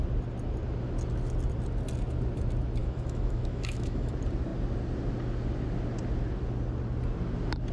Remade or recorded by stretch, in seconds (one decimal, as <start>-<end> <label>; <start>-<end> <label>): 0.0-2.8 recorded; 2.8-4.1 remade; 4.1-7.7 recorded